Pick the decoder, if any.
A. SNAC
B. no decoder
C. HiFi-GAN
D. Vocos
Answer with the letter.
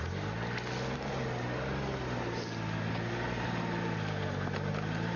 B